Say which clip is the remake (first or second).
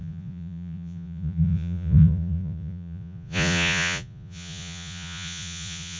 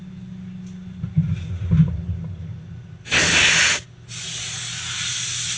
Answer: first